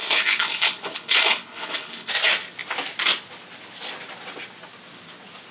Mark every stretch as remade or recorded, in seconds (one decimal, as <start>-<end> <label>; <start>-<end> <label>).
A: 0.0-2.1 remade; 2.1-5.5 recorded